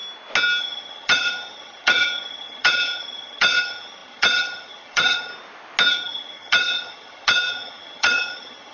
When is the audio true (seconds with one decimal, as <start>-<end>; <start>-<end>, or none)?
0.0-0.6; 5.3-5.9